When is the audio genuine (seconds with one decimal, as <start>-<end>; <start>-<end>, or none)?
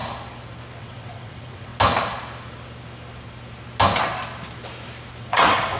0.0-0.8; 1.7-5.2